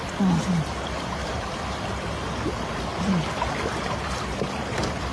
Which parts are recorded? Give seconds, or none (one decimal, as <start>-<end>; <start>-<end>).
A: 0.0-5.1